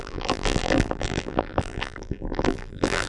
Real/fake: fake